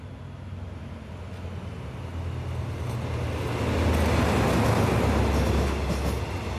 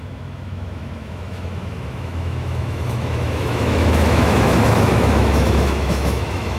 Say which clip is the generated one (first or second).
second